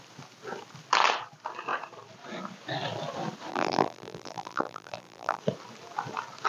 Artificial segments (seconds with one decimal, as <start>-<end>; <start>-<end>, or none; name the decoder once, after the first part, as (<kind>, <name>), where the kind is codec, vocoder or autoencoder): 3.5-5.4 (vocoder, BigVGAN v2)

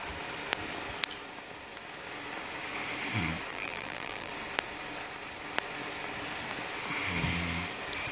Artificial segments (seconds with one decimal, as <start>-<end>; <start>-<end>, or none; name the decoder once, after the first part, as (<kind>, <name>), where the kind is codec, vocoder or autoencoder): 3.5-4.3 (vocoder, BigVGAN v2)

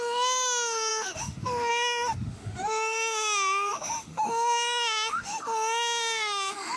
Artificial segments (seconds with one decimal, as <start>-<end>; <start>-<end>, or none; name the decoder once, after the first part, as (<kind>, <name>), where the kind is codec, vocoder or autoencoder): 0.0-6.8 (autoencoder, DAC-VAE)